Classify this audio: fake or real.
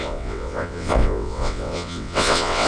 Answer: fake